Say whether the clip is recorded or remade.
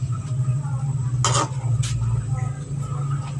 recorded